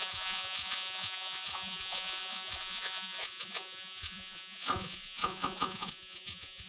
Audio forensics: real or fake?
fake